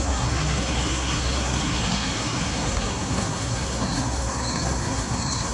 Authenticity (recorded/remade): remade